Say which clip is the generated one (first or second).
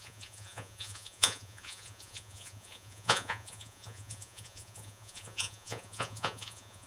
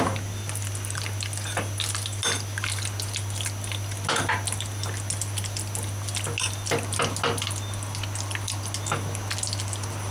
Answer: first